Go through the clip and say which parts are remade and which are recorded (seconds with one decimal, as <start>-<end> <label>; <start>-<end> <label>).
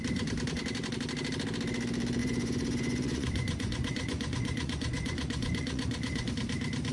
0.0-2.2 recorded; 2.2-6.3 remade; 6.3-6.9 recorded